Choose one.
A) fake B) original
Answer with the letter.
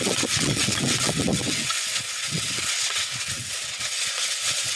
A